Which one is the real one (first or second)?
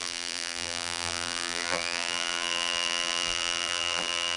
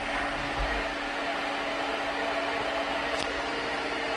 second